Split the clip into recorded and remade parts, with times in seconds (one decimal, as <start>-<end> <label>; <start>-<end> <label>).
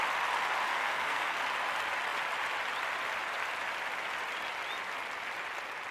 0.0-0.7 recorded; 0.7-1.4 remade; 1.4-5.9 recorded